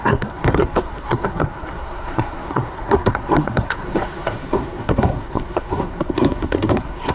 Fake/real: fake